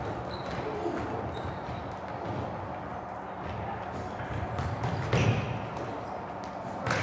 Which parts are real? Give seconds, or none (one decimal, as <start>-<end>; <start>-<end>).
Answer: 0.0-7.0